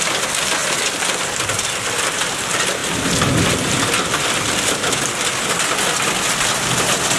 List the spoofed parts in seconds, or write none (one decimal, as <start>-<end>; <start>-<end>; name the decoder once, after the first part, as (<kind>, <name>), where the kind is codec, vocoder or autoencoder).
none